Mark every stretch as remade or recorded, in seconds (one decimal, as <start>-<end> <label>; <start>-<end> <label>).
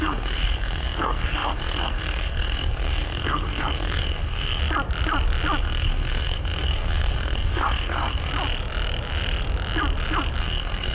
0.0-4.6 remade; 4.6-5.6 recorded; 5.6-8.3 remade; 8.3-10.4 recorded; 10.4-10.9 remade